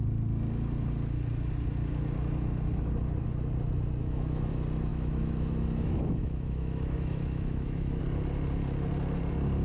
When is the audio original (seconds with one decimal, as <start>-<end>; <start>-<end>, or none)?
0.0-4.0; 4.5-4.9; 8.0-9.6